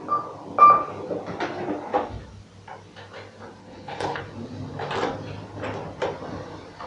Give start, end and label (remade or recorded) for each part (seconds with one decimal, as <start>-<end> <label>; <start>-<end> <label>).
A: 0.0-3.6 recorded; 3.6-4.2 remade; 4.2-6.9 recorded